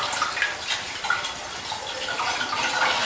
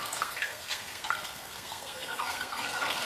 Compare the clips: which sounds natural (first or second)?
first